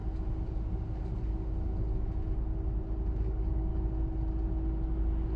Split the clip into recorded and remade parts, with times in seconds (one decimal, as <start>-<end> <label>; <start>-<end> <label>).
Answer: 0.0-3.2 recorded; 3.2-3.7 remade; 3.7-5.4 recorded

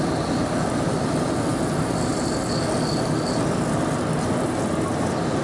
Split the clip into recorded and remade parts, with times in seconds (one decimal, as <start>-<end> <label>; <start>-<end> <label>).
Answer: 0.0-5.4 recorded

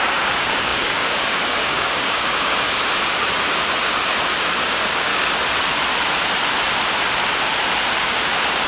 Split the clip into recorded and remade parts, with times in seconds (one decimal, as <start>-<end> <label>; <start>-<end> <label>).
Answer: 0.0-2.8 remade; 2.8-4.5 recorded; 4.5-5.1 remade; 5.1-8.0 recorded; 8.0-8.7 remade

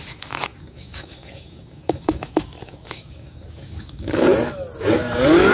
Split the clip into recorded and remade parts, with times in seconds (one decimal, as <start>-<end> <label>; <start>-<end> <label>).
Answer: 0.0-4.3 remade; 4.3-4.8 recorded; 4.8-5.5 remade

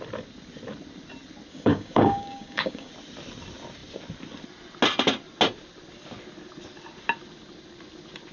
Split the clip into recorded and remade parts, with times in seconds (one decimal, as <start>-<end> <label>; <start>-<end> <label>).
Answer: 0.0-1.5 recorded; 1.5-2.9 remade; 2.9-8.3 recorded

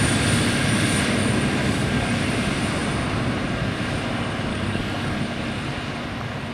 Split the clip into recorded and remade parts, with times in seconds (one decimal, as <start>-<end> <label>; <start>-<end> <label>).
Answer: 0.0-1.6 recorded; 1.6-2.3 remade; 2.3-4.5 recorded; 4.5-5.2 remade; 5.2-6.5 recorded